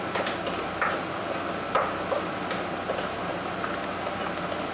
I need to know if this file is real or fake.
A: real